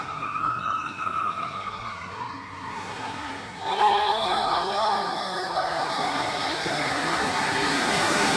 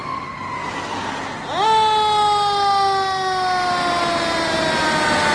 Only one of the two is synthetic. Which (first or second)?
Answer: first